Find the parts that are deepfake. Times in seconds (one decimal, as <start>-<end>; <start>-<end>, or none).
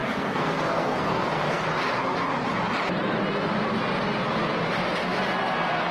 0.0-1.7